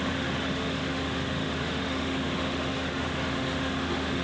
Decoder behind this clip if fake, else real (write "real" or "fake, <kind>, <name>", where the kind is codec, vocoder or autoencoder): fake, autoencoder, DAC-VAE